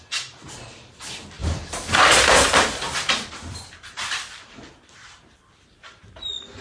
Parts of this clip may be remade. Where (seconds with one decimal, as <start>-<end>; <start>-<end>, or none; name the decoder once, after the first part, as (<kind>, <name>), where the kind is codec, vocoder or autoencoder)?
0.0-6.6 (vocoder, BigVGAN v2)